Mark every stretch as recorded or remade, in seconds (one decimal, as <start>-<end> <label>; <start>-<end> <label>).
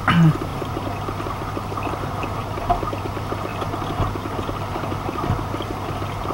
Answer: 0.0-6.3 recorded